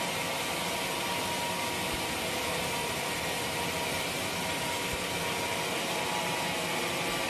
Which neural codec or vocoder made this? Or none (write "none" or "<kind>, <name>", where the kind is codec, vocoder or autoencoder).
none